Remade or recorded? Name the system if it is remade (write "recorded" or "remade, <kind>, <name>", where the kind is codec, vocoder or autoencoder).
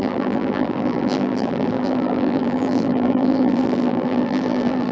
remade, vocoder, BigVGAN v2